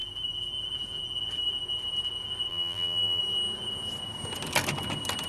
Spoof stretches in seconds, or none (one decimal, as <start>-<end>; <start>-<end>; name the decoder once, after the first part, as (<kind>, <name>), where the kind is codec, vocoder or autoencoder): 2.5-3.2 (vocoder, BigVGAN v2)